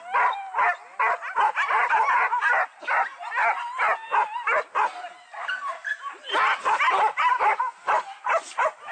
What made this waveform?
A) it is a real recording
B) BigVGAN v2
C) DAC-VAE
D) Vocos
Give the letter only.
A